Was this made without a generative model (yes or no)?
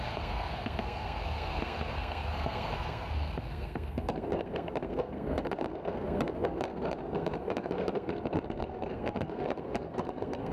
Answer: no